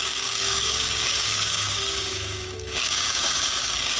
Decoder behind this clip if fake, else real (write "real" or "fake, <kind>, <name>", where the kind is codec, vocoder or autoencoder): fake, codec, DAC